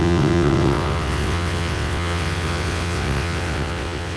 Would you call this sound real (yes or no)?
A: no